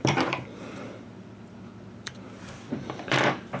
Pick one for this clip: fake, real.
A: fake